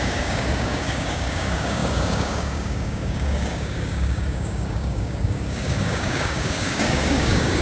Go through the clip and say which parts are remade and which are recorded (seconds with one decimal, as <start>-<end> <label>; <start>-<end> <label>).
0.0-7.6 remade